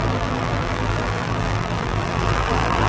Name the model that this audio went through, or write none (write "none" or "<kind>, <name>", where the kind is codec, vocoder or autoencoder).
vocoder, BigVGAN v2